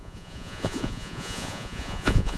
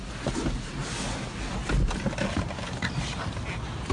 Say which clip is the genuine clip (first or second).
second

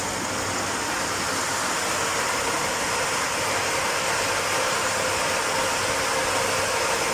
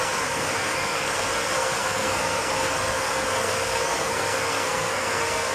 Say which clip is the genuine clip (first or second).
first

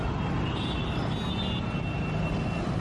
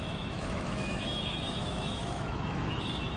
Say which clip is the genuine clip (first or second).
first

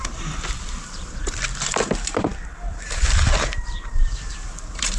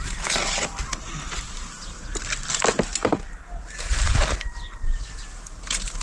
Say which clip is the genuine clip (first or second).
second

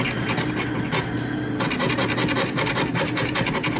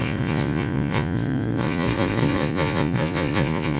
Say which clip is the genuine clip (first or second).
first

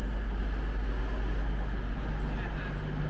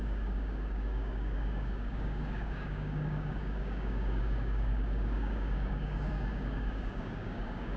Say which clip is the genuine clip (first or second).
first